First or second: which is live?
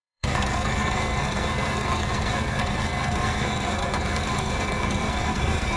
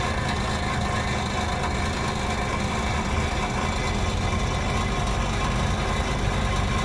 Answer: second